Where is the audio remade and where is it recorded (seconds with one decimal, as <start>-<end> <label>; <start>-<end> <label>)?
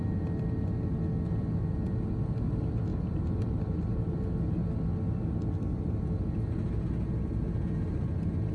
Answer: 0.0-2.9 recorded; 2.9-4.3 remade; 4.3-8.5 recorded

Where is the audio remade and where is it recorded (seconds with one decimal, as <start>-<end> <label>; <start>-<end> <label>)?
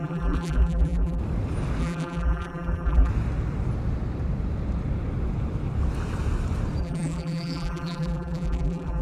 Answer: 0.0-1.2 remade; 1.2-1.8 recorded; 1.8-3.1 remade; 3.1-6.8 recorded; 6.8-9.0 remade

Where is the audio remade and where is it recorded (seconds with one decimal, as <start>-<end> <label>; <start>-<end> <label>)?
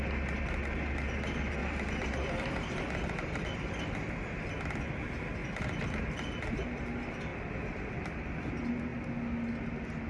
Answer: 0.0-1.6 recorded; 1.6-4.5 remade; 4.5-5.4 recorded; 5.4-6.2 remade; 6.2-7.3 recorded; 7.3-8.5 remade; 8.5-10.1 recorded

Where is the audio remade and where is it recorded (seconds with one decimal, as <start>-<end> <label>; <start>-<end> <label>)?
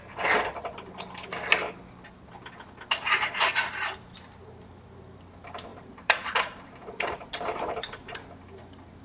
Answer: 0.0-5.7 recorded; 5.7-8.2 remade; 8.2-9.0 recorded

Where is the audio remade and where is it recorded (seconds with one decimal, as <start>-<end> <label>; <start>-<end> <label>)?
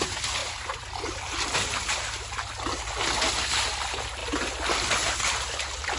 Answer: 0.0-0.4 recorded; 0.4-1.3 remade; 1.3-6.0 recorded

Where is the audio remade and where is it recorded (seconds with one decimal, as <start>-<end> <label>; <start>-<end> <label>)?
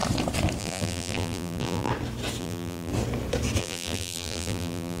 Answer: 0.0-0.6 recorded; 0.6-1.9 remade; 1.9-2.4 recorded; 2.4-2.9 remade; 2.9-3.6 recorded; 3.6-5.0 remade